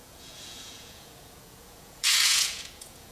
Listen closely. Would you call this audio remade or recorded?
remade